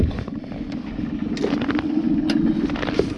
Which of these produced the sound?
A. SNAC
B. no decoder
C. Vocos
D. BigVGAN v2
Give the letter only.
B